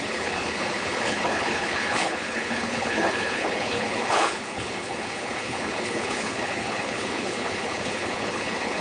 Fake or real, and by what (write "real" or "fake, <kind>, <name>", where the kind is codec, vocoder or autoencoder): fake, codec, HILCodec